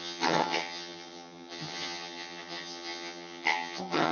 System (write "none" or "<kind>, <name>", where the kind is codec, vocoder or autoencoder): vocoder, HiFi-GAN